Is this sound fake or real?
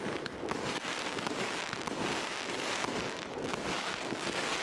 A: fake